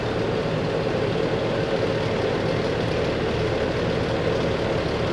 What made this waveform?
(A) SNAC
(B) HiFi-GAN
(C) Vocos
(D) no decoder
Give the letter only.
D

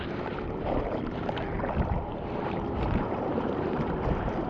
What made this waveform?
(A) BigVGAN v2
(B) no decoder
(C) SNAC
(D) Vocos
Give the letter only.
A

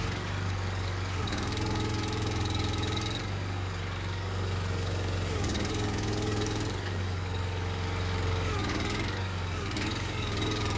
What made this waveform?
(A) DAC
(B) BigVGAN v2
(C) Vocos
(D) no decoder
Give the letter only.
A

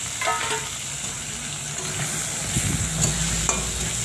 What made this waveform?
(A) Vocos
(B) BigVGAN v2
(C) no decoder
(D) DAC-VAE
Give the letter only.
C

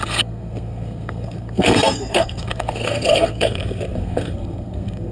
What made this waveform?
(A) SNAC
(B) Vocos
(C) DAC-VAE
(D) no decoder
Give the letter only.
A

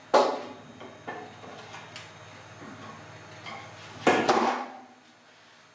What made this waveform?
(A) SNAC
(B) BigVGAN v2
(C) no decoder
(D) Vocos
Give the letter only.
C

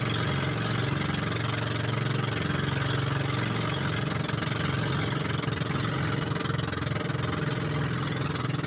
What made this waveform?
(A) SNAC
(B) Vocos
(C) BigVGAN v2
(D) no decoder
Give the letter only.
D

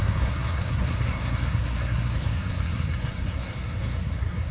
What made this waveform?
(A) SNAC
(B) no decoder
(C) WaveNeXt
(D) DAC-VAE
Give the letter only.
A